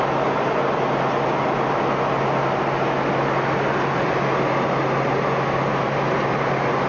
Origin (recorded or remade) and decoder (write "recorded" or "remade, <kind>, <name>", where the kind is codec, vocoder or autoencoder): recorded